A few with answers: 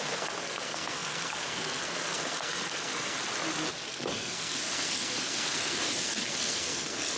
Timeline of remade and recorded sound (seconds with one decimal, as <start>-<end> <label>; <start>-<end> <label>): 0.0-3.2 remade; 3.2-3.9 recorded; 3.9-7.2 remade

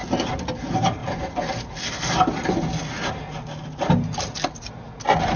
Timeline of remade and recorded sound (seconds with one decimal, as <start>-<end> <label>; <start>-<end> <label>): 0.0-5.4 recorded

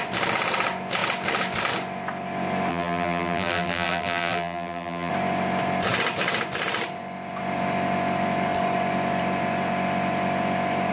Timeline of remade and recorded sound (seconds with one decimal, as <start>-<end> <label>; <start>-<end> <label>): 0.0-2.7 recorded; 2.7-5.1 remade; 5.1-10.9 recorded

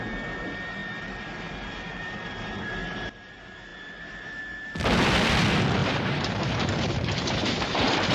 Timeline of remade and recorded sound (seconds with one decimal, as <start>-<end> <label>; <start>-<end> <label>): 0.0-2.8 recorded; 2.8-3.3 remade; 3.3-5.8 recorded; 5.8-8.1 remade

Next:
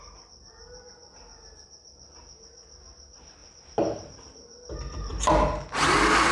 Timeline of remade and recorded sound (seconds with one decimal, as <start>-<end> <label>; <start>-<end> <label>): 0.0-3.4 recorded; 3.4-4.2 remade; 4.2-6.3 recorded

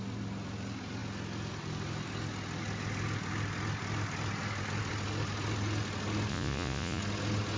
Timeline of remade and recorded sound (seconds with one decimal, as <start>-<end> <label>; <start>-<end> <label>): 0.0-6.3 recorded; 6.3-7.0 remade; 7.0-7.6 recorded

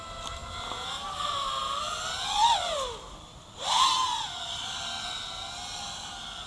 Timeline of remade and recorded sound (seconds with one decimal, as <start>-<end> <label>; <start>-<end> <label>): 0.0-6.5 recorded